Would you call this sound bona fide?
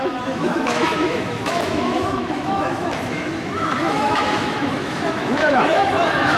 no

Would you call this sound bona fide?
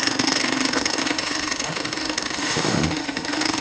no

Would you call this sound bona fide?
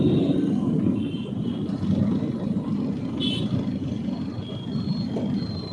yes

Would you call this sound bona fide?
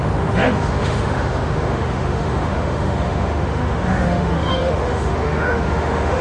no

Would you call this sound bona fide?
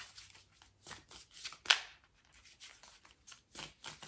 yes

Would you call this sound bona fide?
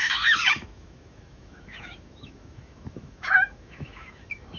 no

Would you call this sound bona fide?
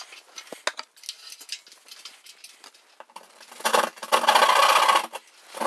yes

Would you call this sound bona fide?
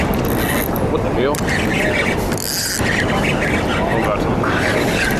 yes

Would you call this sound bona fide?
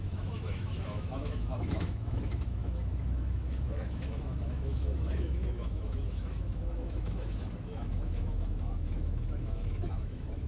no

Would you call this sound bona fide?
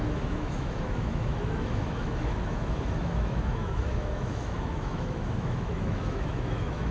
no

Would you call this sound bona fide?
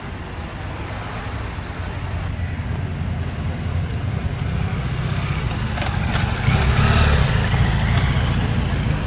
yes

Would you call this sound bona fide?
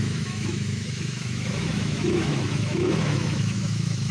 no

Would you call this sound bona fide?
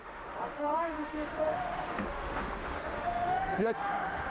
no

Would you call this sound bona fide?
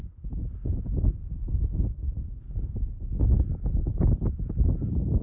yes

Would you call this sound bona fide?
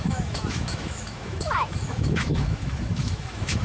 no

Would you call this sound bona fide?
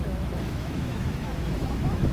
no